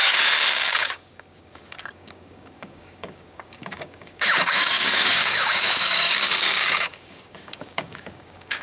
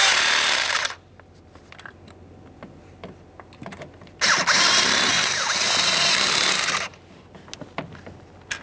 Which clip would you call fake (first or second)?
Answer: first